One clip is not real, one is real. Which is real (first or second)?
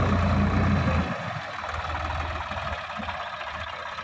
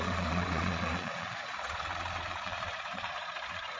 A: first